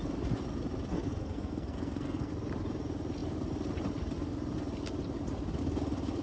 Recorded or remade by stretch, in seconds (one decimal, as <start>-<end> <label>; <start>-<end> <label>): 0.0-0.9 recorded; 0.9-2.3 remade; 2.3-6.2 recorded